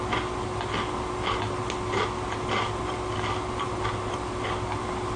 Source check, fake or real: real